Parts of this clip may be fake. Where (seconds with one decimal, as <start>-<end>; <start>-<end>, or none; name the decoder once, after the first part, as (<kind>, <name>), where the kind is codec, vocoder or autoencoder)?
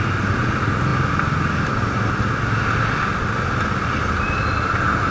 none